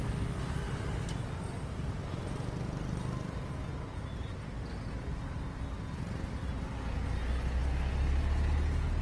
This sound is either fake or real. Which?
real